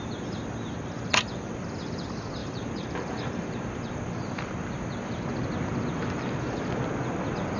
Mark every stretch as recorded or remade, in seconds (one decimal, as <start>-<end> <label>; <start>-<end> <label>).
0.0-2.4 recorded; 2.4-4.0 remade; 4.0-7.6 recorded